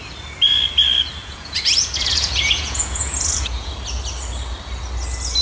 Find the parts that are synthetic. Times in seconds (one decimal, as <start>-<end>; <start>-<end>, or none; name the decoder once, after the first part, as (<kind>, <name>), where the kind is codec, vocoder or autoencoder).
1.2-3.7 (vocoder, Vocos)